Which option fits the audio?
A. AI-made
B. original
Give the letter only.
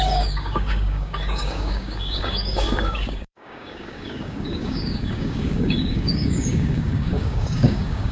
A